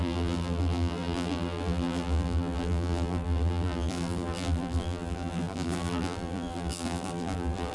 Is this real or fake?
fake